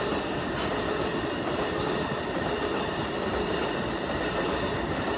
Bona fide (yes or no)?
yes